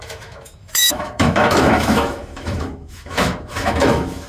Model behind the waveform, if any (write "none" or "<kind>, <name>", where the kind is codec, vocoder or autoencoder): autoencoder, DAC-VAE